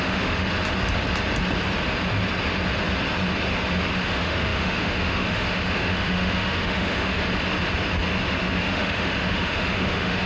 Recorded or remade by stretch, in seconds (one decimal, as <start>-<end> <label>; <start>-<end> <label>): 0.0-0.5 remade; 0.5-3.9 recorded; 3.9-7.2 remade; 7.2-8.6 recorded; 8.6-10.3 remade